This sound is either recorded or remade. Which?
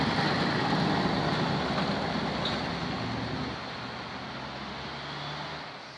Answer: recorded